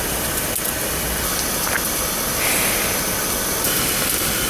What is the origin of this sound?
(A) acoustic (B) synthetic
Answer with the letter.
A